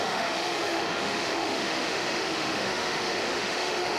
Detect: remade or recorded remade